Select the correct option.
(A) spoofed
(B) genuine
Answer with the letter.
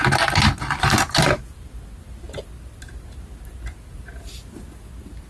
B